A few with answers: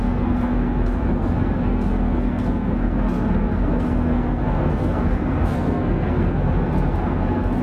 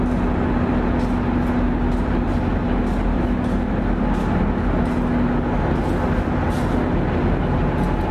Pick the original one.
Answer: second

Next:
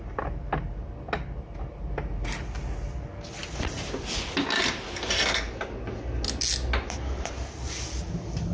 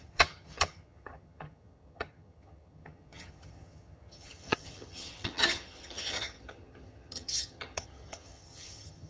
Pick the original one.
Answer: first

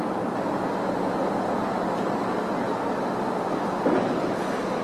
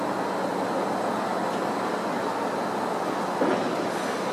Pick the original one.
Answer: second